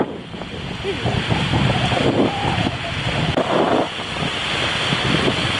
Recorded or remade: recorded